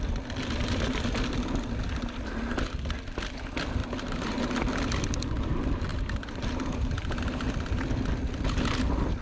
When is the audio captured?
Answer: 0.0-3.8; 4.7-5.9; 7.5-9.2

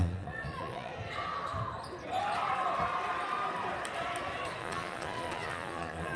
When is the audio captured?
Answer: 0.9-4.6